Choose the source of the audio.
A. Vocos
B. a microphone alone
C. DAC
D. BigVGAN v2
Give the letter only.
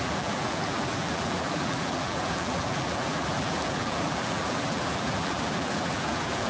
D